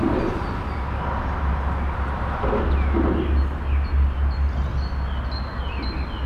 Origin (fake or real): real